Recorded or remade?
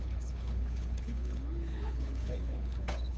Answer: remade